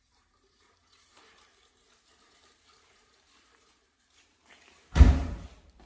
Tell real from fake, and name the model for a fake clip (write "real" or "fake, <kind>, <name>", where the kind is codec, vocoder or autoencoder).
fake, vocoder, BigVGAN v2